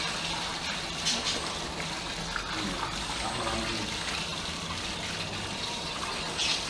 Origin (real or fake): real